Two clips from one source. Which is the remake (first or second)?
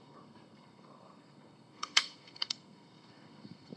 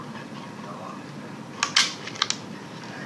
first